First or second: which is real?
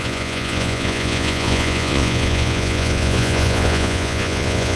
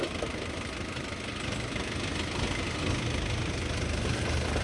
second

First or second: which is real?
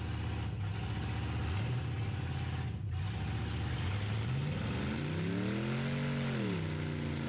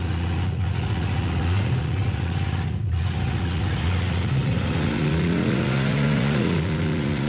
first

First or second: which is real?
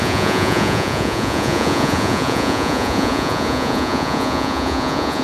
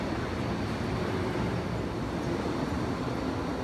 second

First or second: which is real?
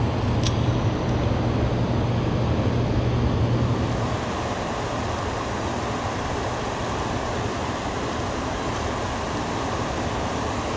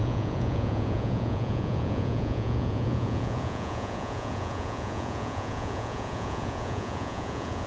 first